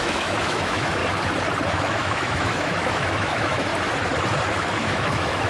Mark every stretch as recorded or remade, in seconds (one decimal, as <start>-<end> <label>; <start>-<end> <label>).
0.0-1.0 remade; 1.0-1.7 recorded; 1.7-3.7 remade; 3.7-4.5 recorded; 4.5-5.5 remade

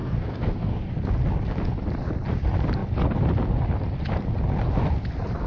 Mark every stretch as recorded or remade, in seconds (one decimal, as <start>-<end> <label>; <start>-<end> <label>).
0.0-0.7 remade; 0.7-5.5 recorded

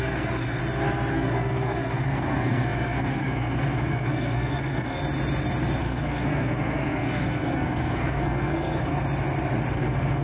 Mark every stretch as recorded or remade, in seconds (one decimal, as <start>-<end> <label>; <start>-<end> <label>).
0.0-0.6 remade; 0.6-1.1 recorded; 1.1-5.0 remade; 5.0-5.8 recorded; 5.8-8.9 remade; 8.9-9.7 recorded; 9.7-10.2 remade

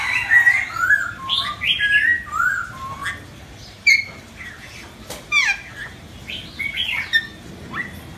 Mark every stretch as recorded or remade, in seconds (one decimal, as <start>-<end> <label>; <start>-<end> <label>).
0.0-8.2 recorded